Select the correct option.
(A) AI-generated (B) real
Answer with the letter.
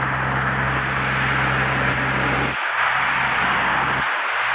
B